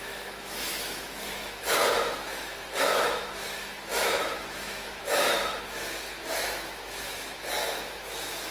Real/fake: fake